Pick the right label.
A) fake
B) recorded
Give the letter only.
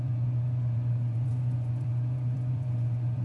A